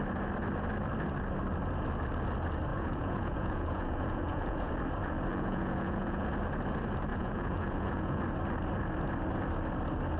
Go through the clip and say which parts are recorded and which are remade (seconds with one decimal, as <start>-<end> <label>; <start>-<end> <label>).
0.0-2.7 recorded; 2.7-4.7 remade; 4.7-5.3 recorded; 5.3-6.3 remade; 6.3-7.1 recorded; 7.1-8.2 remade; 8.2-10.2 recorded